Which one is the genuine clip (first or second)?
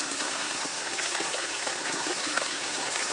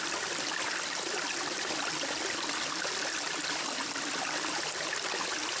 second